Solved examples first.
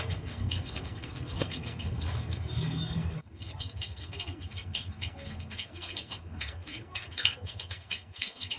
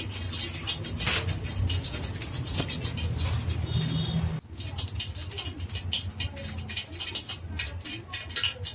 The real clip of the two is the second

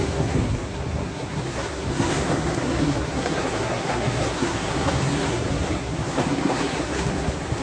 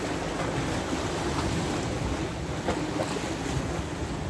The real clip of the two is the second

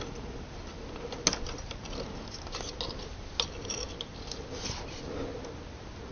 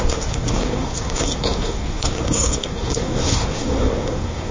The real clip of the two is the first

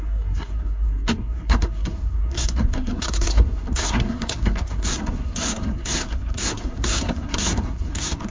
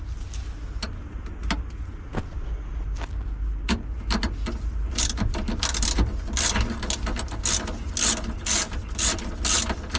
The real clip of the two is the second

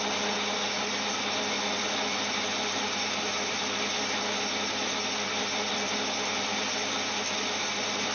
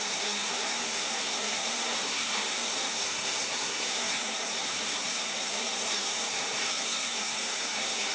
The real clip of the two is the first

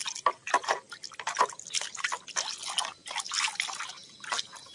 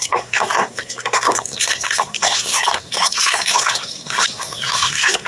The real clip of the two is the first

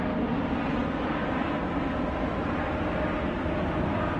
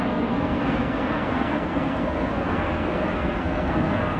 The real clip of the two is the first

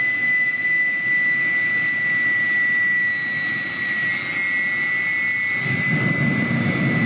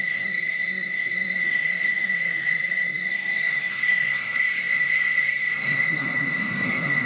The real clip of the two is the first